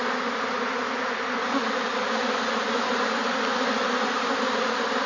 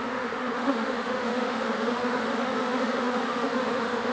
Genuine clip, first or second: first